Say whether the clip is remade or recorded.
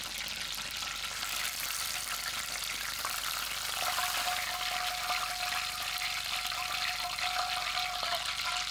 recorded